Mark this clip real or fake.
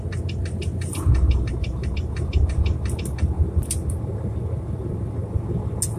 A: real